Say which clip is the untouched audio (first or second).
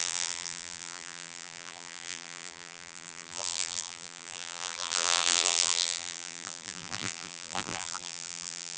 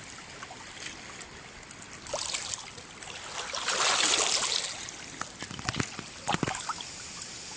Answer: second